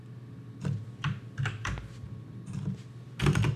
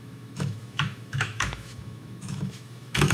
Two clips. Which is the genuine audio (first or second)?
first